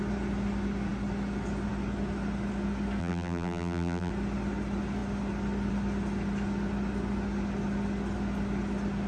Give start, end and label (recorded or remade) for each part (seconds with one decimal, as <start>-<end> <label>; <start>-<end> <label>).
0.0-3.0 recorded; 3.0-4.1 remade; 4.1-9.1 recorded